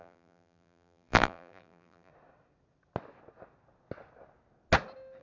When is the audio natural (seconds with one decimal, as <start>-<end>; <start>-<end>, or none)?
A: 2.1-5.2